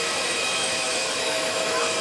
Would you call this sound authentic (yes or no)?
no